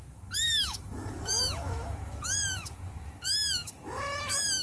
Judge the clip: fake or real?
fake